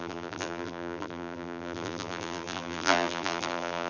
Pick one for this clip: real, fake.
fake